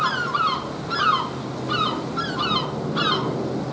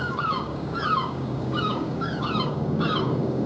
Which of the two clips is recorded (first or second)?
first